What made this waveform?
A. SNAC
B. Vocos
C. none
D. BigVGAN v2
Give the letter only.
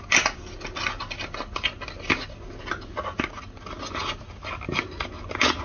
C